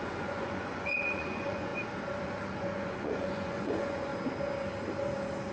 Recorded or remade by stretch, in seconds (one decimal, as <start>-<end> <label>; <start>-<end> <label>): 0.0-1.7 remade; 1.7-2.6 recorded; 2.6-4.1 remade; 4.1-5.5 recorded